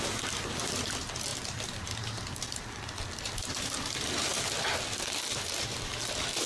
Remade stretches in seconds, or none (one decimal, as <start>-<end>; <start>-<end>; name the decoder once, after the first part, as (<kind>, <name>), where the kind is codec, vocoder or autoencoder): none